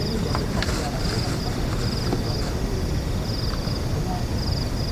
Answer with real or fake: real